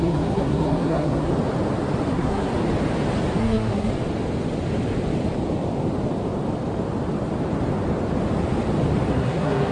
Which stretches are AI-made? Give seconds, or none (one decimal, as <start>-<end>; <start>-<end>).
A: 0.0-1.3; 2.1-2.5; 3.4-3.9; 9.1-9.7